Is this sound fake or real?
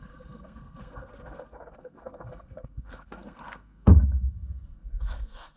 fake